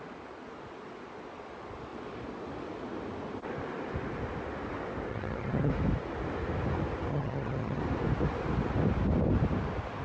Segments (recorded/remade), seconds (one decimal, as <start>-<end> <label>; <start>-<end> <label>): 0.0-5.1 recorded; 5.1-5.7 remade; 5.7-7.1 recorded; 7.1-7.8 remade; 7.8-10.0 recorded